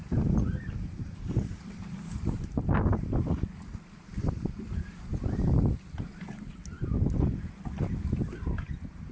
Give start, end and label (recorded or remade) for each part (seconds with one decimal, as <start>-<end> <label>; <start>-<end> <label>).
0.0-9.1 recorded